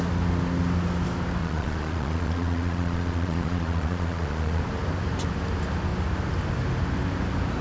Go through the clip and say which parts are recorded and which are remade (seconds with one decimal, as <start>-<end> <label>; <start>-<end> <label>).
0.0-1.4 recorded; 1.4-4.6 remade; 4.6-7.6 recorded